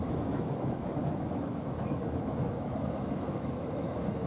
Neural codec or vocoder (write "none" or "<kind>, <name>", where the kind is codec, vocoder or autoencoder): autoencoder, DAC-VAE